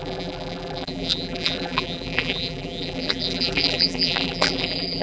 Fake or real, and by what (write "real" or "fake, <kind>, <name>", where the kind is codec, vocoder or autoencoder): fake, vocoder, BigVGAN v2